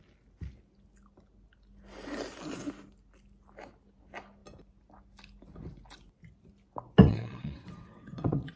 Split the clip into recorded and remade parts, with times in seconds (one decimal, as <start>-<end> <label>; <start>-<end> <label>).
0.0-7.0 recorded; 7.0-8.6 remade